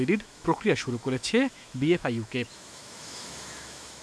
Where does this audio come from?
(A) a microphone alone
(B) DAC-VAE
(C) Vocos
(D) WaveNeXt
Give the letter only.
B